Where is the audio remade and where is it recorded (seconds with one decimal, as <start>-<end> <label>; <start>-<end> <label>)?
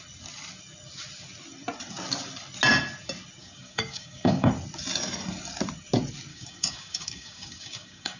0.0-3.4 recorded; 3.4-4.5 remade; 4.5-6.3 recorded; 6.3-8.2 remade